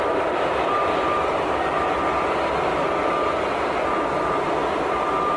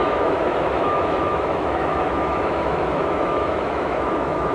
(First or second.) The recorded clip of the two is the first